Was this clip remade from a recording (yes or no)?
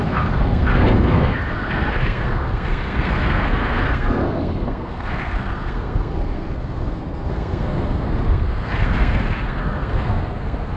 yes